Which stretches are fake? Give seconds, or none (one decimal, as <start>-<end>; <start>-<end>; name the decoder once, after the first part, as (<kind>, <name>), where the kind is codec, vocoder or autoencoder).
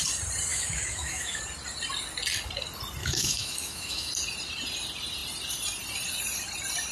0.5-1.4 (autoencoder, DAC-VAE); 3.0-4.1